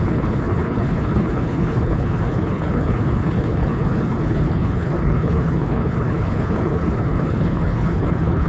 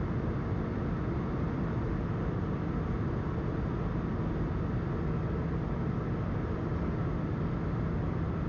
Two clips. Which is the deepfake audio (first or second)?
first